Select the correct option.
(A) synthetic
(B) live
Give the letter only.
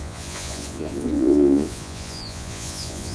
A